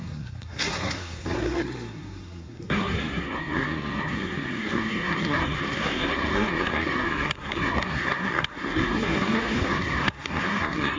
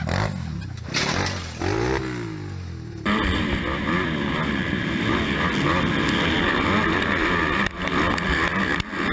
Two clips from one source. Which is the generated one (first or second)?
first